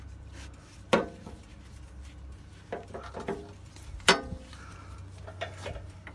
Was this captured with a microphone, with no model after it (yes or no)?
yes